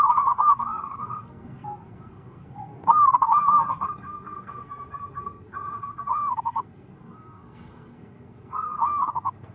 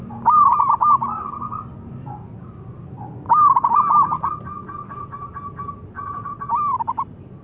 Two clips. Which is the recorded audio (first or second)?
second